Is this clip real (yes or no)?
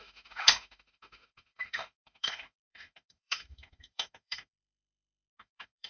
no